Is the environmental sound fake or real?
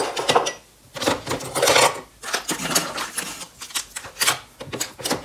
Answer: real